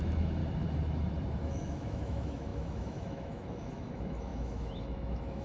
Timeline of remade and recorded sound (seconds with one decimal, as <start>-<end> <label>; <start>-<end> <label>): 0.0-0.4 remade; 0.4-1.5 recorded; 1.5-5.4 remade